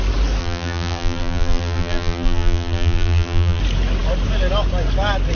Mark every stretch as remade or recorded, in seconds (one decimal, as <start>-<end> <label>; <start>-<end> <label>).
0.0-0.4 recorded; 0.4-3.6 remade; 3.6-5.3 recorded